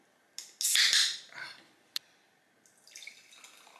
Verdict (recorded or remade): recorded